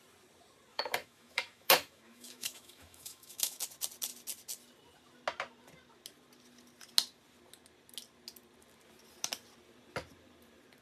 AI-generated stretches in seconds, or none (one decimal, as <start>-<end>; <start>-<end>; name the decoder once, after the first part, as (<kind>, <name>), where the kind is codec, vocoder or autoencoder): 0.7-3.6 (autoencoder, DAC-VAE)